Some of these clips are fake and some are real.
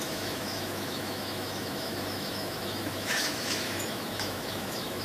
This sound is fake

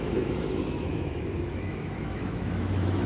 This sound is fake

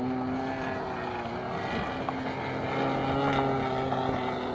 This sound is real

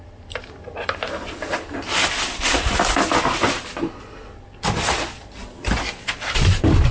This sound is real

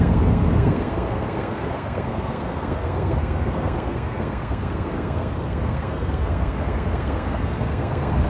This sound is fake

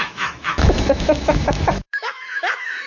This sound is fake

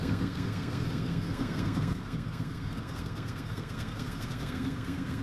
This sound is fake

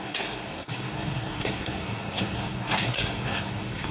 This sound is fake